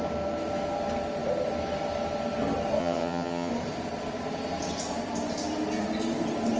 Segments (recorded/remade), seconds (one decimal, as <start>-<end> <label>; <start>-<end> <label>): 0.0-2.8 recorded; 2.8-3.5 remade; 3.5-6.6 recorded